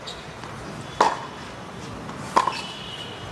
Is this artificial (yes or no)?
no